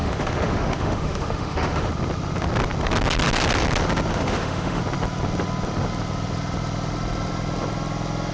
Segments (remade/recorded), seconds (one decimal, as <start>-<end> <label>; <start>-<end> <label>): 0.0-1.9 remade; 1.9-4.1 recorded; 4.1-4.8 remade; 4.8-8.3 recorded

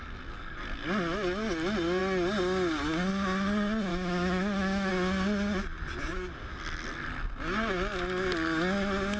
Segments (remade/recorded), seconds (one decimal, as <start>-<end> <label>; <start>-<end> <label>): 0.0-3.9 recorded; 3.9-4.9 remade; 4.9-9.2 recorded

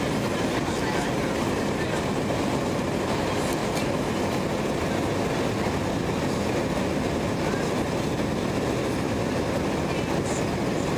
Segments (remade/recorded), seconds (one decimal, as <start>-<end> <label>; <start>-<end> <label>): 0.0-11.0 recorded

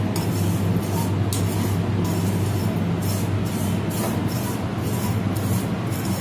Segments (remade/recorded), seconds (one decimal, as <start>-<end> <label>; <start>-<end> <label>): 0.0-6.2 recorded

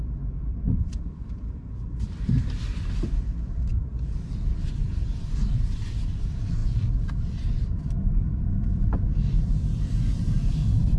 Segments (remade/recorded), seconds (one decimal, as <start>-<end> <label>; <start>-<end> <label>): 0.0-3.7 remade; 3.7-5.0 recorded; 5.0-11.0 remade

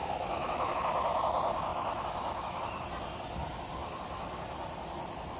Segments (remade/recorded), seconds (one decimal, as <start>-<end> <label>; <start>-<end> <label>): 0.0-0.7 remade; 0.7-1.7 recorded; 1.7-2.6 remade; 2.6-5.4 recorded

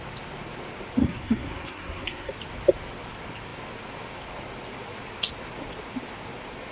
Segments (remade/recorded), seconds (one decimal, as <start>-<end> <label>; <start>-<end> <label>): 0.0-1.0 recorded; 1.0-2.3 remade; 2.3-6.7 recorded

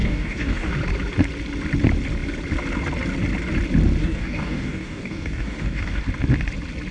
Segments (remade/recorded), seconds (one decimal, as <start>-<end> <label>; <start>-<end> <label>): 0.0-0.7 remade; 0.7-4.0 recorded; 4.0-6.0 remade; 6.0-6.9 recorded